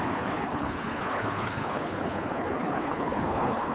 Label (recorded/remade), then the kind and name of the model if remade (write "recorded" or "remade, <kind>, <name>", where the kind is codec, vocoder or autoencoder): remade, codec, HILCodec